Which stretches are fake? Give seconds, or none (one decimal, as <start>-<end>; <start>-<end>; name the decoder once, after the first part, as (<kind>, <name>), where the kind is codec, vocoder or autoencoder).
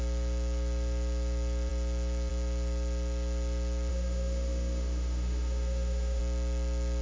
3.9-6.2 (autoencoder, DAC-VAE)